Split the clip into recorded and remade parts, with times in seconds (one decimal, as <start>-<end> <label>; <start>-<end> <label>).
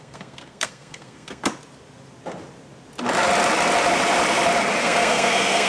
0.0-1.4 remade; 1.4-4.8 recorded; 4.8-5.7 remade